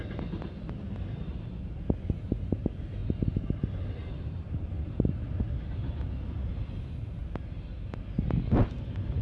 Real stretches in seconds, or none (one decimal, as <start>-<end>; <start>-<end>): 0.0-9.2